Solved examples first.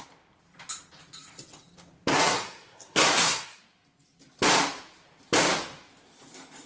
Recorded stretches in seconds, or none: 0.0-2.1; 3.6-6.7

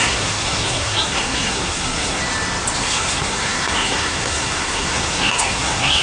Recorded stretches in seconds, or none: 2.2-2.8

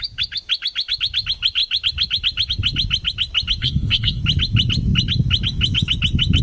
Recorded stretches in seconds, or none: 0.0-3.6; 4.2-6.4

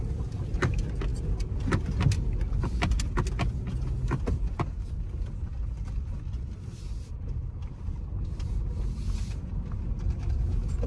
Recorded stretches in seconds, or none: 0.0-10.9